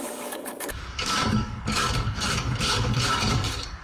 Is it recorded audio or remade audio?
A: remade